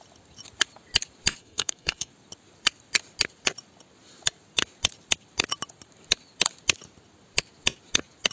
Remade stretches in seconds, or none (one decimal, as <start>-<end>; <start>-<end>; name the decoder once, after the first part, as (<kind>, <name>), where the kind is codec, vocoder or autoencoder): 1.4-2.1 (codec, SNAC)